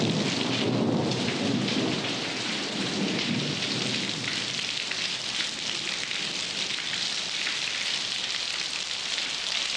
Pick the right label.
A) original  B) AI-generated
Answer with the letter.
A